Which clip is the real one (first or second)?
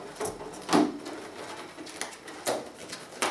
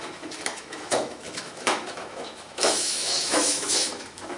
first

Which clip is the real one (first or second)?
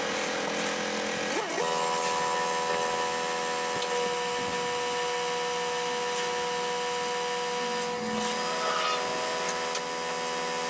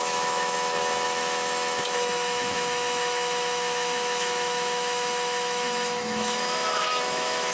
first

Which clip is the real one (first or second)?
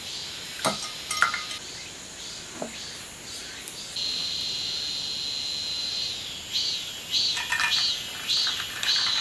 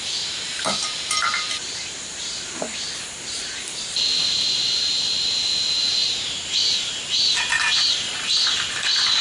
first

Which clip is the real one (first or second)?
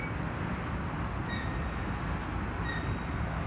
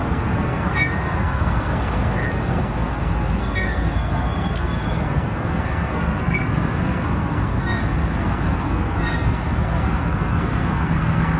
first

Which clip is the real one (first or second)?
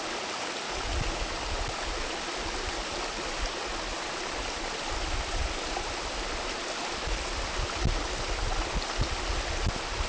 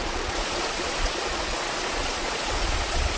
first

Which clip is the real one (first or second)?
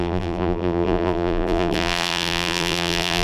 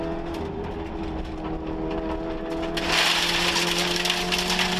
second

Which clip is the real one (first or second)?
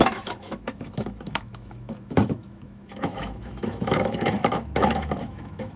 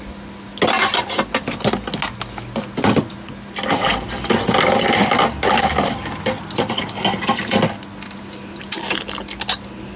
second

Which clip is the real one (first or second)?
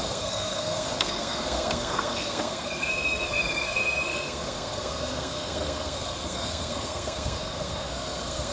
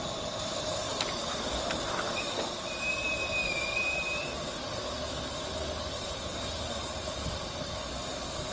second